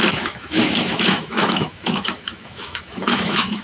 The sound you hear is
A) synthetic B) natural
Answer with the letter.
A